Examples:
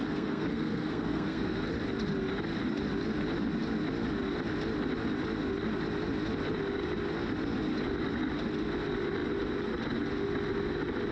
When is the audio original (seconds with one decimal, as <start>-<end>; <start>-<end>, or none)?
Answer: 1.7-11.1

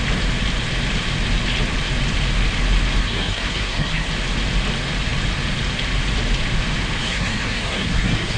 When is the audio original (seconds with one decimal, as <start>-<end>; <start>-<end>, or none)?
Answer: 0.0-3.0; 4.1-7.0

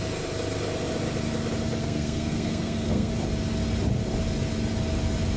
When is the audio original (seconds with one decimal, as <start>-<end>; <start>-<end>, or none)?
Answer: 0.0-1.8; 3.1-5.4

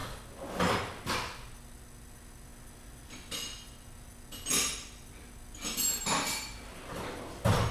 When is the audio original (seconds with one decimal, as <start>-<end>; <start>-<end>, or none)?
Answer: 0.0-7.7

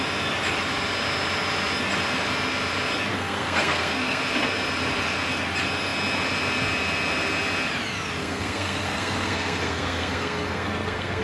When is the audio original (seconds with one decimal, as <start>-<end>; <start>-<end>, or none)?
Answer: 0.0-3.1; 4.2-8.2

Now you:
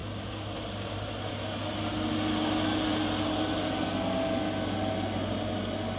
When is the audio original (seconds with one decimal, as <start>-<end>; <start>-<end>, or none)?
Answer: 0.0-6.0

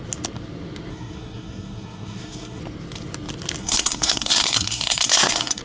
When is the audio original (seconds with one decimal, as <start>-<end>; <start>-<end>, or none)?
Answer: 0.0-0.9; 2.6-3.6